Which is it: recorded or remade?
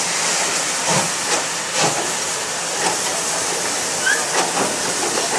recorded